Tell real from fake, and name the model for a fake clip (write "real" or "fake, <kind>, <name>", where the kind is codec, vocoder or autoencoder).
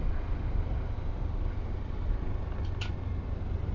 real